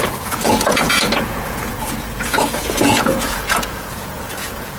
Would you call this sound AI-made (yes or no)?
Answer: yes